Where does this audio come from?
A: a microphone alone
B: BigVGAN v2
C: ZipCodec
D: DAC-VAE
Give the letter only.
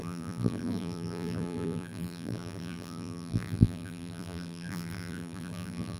B